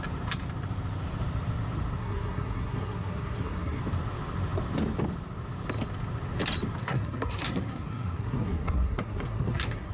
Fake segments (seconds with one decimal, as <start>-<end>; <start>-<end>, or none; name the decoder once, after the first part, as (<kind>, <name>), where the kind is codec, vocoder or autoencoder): 2.0-3.8 (codec, SNAC); 6.8-9.9